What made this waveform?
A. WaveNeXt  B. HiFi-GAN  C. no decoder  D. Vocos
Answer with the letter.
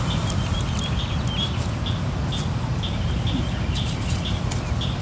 C